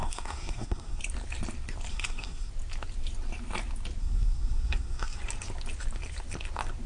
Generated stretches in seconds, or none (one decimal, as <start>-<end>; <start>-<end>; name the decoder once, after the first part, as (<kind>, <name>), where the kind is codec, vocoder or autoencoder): 0.0-1.0 (codec, SNAC); 1.9-2.5; 4.0-5.2